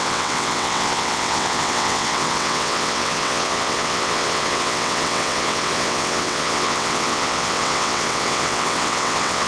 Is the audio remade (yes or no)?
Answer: yes